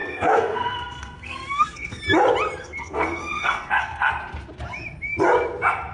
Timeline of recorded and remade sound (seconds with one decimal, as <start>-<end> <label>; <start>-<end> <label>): 0.0-2.0 remade; 2.0-2.6 recorded; 2.6-4.1 remade; 4.1-5.9 recorded

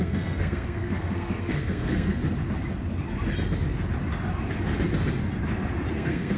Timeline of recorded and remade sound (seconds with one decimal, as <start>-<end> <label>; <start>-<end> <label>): 0.0-2.2 remade; 2.2-5.9 recorded; 5.9-6.4 remade

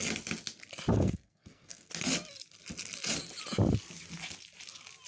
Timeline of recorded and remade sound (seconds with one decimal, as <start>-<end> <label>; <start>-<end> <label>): 0.0-0.9 recorded; 0.9-1.9 remade; 1.9-5.1 recorded

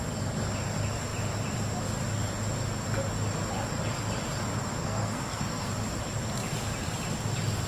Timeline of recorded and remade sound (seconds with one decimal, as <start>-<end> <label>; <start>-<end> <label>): 0.0-4.8 recorded; 4.8-5.7 remade; 5.7-7.7 recorded

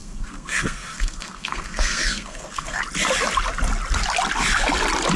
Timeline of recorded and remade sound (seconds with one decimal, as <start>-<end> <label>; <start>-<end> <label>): 0.0-2.8 remade; 2.8-5.2 recorded

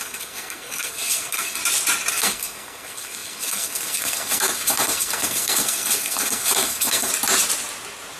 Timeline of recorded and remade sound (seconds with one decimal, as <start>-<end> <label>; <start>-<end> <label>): 0.0-1.6 remade; 1.6-2.1 recorded; 2.1-7.1 remade; 7.1-8.2 recorded